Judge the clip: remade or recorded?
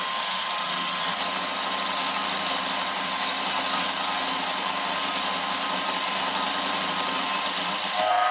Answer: recorded